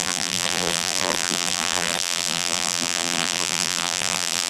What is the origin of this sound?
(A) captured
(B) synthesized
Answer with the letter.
B